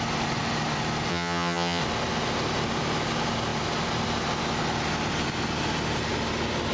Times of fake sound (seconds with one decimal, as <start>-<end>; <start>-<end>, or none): 1.1-1.8